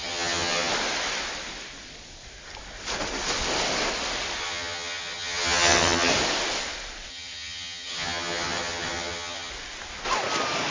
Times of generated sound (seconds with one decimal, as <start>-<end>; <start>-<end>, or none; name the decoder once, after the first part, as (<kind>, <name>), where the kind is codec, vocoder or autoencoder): 0.0-0.7 (vocoder, HiFi-GAN); 4.4-6.1; 7.1-9.5